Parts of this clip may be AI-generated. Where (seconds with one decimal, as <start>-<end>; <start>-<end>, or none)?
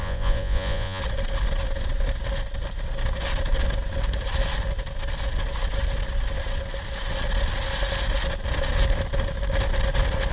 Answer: 0.0-1.0